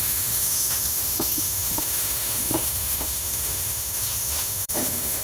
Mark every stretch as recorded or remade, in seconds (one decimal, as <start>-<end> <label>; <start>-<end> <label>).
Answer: 0.0-5.2 remade